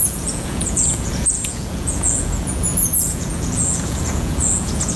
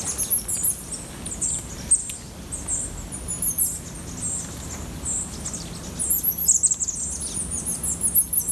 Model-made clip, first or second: first